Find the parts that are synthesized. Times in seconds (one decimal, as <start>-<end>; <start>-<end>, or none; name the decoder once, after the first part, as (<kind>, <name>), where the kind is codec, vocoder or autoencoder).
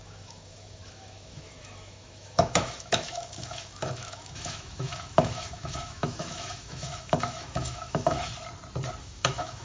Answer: 0.0-8.3 (autoencoder, DAC-VAE); 9.0-9.6